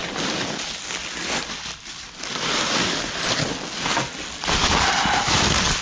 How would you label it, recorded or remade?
recorded